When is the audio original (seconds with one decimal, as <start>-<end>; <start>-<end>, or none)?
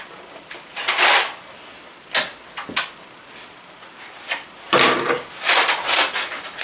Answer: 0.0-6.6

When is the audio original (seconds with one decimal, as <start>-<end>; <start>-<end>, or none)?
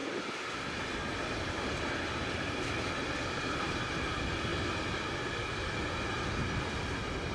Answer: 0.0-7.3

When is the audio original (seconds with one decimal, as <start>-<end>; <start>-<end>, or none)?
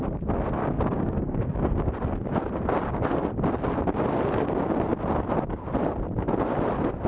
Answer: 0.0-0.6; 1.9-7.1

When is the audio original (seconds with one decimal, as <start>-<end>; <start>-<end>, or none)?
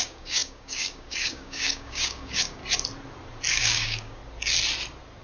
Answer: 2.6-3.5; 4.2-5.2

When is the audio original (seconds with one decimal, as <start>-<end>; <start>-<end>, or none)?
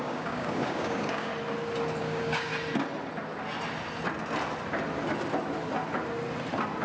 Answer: 1.3-2.0; 2.5-6.8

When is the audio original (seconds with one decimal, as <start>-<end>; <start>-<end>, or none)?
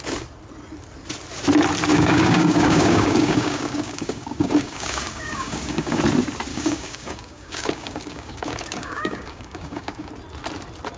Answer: 0.0-1.9; 6.0-6.5; 10.1-11.0